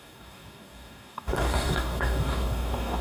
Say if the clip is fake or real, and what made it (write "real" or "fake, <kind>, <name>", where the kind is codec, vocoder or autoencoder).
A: fake, codec, DAC